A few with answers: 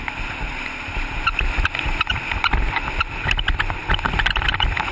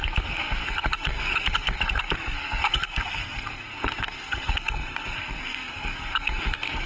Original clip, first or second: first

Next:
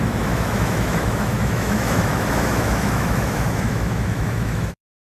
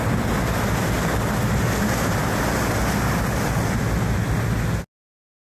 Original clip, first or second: second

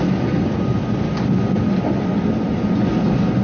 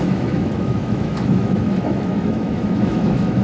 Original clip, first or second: first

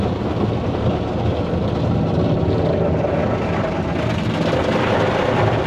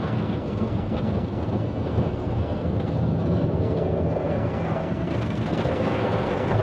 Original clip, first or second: first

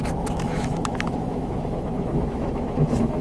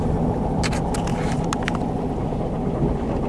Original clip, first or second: second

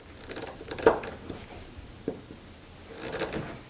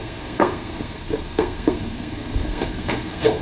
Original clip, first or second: first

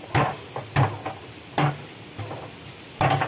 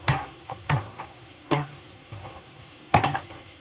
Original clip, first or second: first